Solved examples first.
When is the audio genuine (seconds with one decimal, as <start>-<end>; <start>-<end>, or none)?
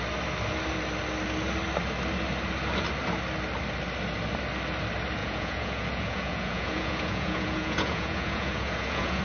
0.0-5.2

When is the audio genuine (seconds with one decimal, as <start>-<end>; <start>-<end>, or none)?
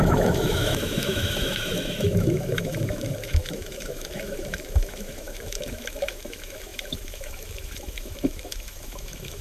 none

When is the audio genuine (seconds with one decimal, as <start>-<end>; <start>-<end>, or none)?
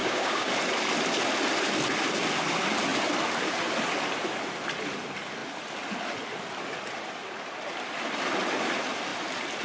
0.5-9.6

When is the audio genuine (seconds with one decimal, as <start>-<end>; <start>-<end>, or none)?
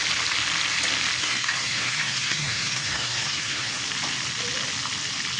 0.0-1.2; 3.8-5.4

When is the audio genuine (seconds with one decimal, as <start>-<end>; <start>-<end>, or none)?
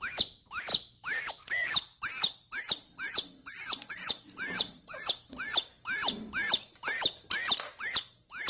0.0-8.5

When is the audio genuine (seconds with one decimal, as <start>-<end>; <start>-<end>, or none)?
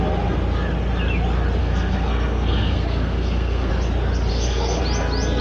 0.0-1.6; 3.7-4.3; 4.8-5.4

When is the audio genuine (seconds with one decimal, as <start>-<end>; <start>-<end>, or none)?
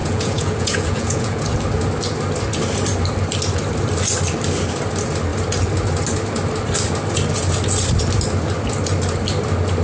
1.4-9.8